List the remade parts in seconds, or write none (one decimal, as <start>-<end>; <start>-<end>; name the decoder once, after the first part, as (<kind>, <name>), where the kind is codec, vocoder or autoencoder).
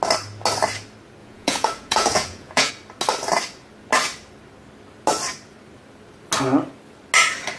1.2-2.7 (vocoder, Vocos)